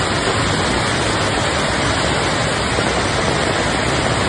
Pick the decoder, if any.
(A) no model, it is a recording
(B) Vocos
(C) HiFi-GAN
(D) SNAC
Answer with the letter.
A